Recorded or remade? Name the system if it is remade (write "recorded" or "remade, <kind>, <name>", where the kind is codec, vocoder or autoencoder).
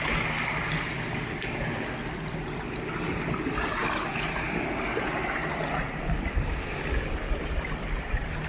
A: recorded